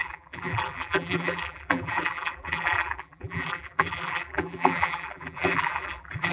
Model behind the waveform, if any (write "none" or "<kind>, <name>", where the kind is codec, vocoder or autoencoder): vocoder, BigVGAN v2